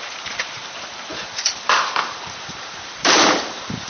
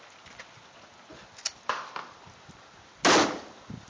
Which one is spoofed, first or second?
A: first